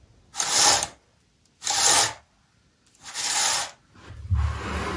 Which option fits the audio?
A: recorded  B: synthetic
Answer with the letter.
A